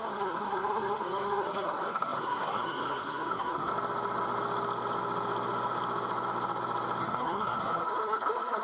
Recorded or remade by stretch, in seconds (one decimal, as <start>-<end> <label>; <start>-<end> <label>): 0.0-3.7 remade; 3.7-7.0 recorded; 7.0-8.6 remade